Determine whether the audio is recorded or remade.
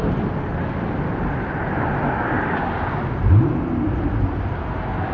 recorded